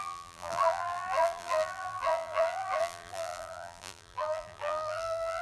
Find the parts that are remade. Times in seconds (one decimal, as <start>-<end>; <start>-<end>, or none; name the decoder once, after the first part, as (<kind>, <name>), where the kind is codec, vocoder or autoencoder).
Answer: 0.0-5.4 (vocoder, BigVGAN v2)

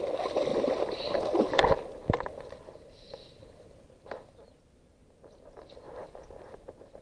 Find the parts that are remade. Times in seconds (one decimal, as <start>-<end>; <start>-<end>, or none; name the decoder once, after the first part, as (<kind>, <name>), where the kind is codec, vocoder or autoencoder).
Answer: 0.5-3.1 (vocoder, BigVGAN v2)